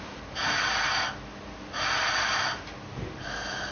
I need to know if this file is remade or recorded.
recorded